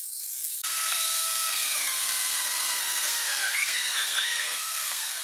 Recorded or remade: remade